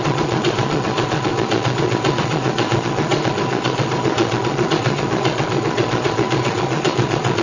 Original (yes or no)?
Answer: no